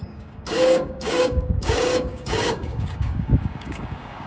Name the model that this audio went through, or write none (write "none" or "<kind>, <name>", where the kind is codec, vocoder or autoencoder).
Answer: codec, DAC